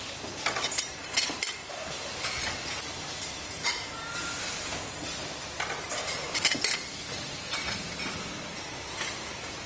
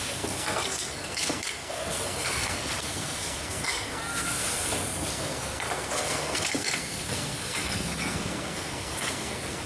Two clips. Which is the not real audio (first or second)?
second